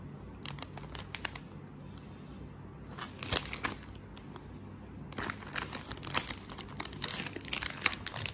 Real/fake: real